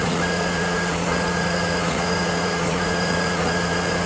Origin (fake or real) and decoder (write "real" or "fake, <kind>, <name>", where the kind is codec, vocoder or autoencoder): fake, vocoder, Vocos